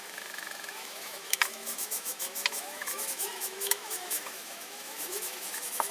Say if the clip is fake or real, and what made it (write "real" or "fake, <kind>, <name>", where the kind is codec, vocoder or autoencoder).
fake, autoencoder, DAC-VAE